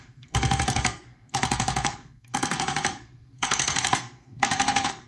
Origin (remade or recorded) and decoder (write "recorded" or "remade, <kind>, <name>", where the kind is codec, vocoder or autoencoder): remade, codec, SNAC